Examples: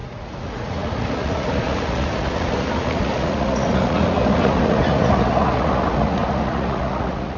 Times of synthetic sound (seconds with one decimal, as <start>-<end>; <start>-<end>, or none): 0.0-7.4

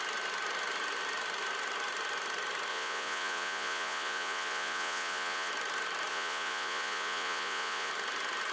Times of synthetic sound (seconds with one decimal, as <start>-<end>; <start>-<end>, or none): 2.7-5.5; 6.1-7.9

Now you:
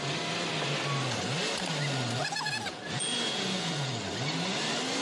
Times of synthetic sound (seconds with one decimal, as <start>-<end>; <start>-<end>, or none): 2.2-3.9

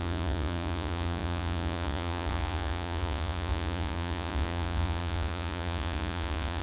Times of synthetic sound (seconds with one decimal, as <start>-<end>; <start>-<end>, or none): 0.0-6.6

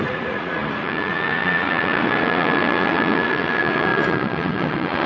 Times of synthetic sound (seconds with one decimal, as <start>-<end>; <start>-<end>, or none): 0.0-5.1

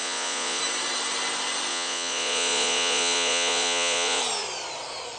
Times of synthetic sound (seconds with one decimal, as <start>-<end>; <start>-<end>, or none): 0.0-0.6; 1.7-4.2